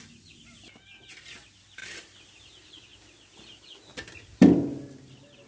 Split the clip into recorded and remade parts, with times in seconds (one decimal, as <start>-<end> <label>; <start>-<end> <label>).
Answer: 0.0-5.5 recorded